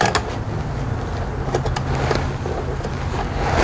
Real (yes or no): yes